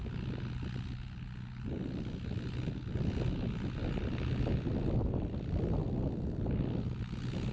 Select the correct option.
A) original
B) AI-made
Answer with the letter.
A